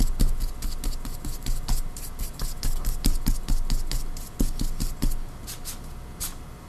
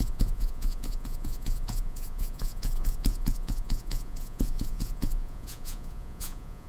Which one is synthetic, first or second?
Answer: second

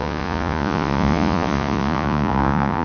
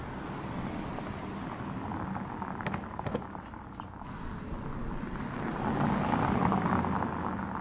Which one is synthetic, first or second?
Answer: first